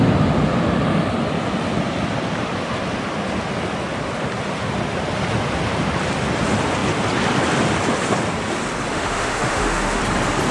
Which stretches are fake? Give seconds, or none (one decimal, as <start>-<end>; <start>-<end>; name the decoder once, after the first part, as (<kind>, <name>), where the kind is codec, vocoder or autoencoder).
8.9-10.0 (autoencoder, DAC-VAE)